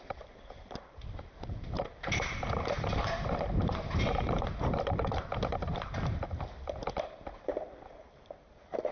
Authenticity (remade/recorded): remade